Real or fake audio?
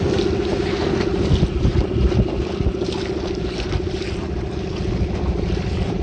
real